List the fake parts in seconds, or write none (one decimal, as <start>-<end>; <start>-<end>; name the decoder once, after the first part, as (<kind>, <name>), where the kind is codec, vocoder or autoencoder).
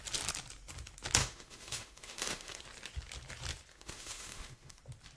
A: 1.2-2.6 (autoencoder, DAC-VAE); 3.7-4.8